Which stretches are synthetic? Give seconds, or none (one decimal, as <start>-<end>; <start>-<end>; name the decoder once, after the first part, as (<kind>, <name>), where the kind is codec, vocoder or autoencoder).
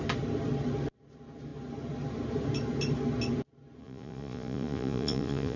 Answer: 3.8-5.6 (vocoder, Vocos)